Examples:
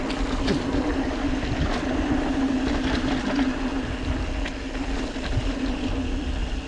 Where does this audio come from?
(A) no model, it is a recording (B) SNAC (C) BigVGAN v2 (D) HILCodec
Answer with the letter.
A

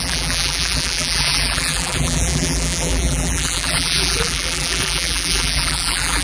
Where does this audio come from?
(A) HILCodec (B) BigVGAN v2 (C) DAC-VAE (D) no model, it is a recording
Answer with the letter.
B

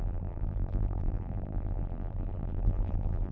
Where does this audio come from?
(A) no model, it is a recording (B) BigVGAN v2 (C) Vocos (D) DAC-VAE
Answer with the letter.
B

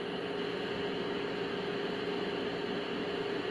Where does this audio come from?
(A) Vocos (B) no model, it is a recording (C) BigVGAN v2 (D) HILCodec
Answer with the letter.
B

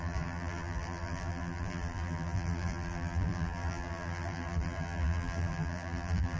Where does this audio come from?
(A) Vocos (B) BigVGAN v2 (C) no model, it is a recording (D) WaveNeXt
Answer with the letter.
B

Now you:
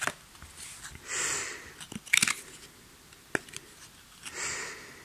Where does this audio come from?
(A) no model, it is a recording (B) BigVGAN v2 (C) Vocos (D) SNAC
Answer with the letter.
A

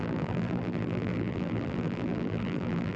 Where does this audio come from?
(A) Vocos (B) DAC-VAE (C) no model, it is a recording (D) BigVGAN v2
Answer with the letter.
D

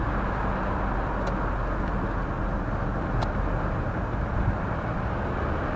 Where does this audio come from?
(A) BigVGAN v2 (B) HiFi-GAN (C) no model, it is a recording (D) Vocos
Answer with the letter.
C